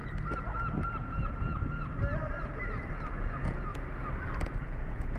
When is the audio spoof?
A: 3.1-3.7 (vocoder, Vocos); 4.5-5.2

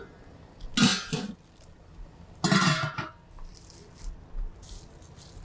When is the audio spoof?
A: none

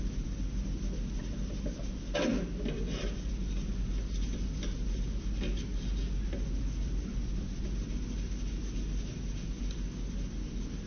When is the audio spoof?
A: none

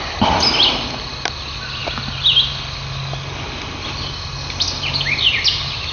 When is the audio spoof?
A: none